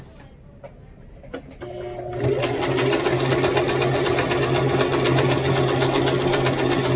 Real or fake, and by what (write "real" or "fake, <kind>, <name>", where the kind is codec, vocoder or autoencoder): real